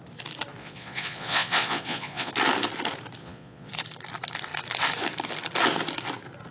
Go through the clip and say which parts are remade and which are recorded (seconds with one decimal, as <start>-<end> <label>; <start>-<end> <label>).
0.0-0.6 recorded; 0.6-2.3 remade; 2.3-3.2 recorded; 3.2-3.7 remade; 3.7-6.5 recorded